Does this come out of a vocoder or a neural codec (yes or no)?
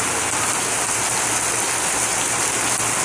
no